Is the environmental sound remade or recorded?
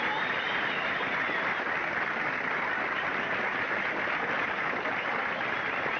recorded